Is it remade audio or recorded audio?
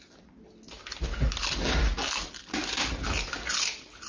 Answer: recorded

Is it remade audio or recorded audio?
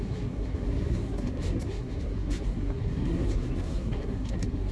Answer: remade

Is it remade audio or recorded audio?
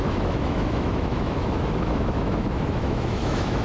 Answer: remade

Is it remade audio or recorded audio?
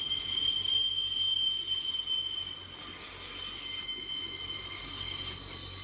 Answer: recorded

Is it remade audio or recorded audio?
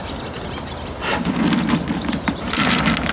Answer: recorded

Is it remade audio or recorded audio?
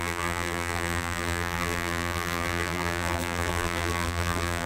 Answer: remade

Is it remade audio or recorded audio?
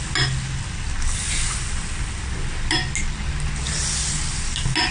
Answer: recorded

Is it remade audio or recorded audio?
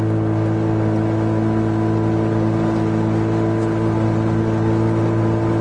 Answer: recorded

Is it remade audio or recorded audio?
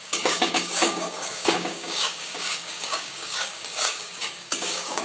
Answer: remade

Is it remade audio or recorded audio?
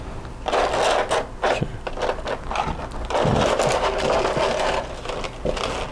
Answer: recorded